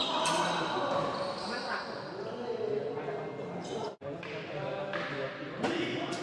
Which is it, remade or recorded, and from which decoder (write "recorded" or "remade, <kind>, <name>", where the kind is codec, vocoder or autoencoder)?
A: recorded